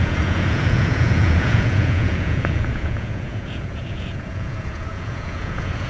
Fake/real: fake